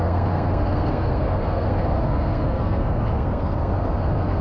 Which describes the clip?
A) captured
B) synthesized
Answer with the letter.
B